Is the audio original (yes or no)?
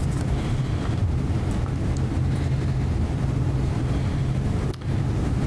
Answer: yes